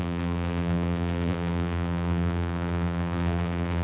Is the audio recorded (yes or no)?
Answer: no